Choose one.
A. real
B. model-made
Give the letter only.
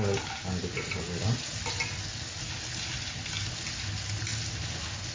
A